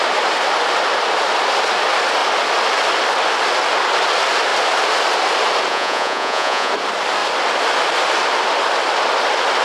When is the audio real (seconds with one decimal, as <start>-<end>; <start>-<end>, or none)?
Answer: 0.0-5.7; 6.7-9.6